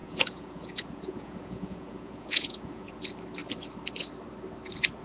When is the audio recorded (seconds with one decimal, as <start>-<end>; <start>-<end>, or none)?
3.0-5.0